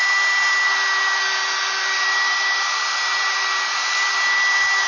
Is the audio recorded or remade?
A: recorded